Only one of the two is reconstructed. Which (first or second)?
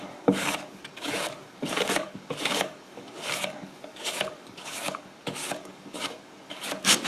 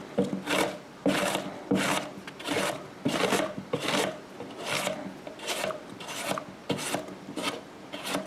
first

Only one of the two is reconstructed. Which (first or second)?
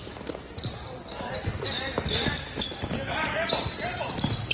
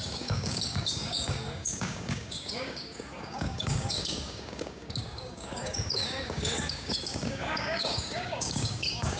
second